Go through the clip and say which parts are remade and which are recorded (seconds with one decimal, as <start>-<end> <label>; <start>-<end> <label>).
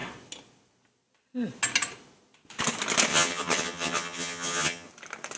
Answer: 0.0-3.1 recorded; 3.1-4.9 remade; 4.9-5.4 recorded